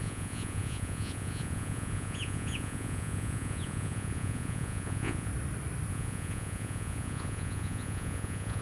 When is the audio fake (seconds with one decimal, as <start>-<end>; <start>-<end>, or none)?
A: 0.0-5.3; 5.9-8.6